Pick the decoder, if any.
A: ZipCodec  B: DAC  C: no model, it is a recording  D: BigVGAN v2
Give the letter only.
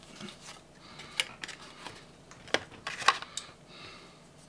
C